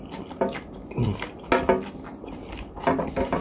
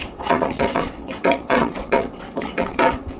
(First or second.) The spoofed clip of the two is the second